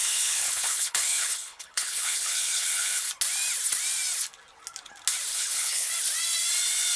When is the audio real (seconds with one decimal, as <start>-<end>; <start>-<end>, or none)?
3.1-5.3; 5.9-7.0